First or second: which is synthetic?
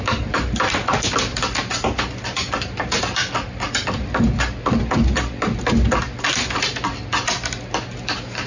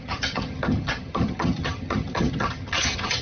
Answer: second